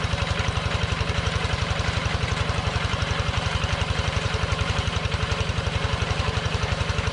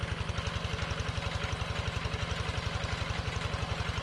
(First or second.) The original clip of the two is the second